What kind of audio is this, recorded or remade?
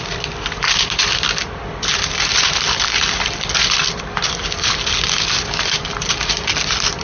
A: recorded